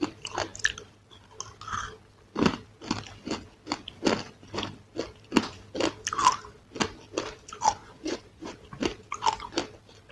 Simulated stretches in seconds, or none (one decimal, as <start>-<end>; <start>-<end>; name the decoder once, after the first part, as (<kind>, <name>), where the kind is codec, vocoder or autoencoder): 7.8-8.5 (vocoder, Vocos)